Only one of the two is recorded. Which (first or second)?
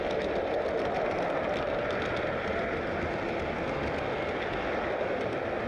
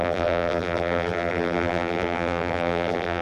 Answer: first